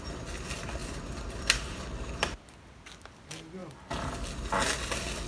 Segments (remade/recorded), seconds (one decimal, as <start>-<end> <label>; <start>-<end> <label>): 0.0-0.8 recorded; 0.8-2.4 remade; 2.4-5.3 recorded